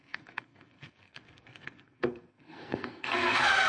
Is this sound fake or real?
fake